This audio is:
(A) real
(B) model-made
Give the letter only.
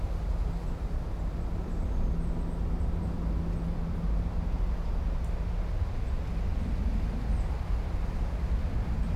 A